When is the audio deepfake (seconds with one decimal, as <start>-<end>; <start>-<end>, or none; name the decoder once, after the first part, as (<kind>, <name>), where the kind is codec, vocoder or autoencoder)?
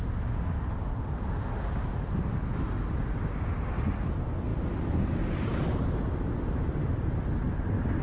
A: 4.5-7.5 (vocoder, BigVGAN v2)